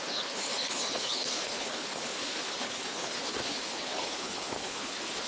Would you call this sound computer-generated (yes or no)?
yes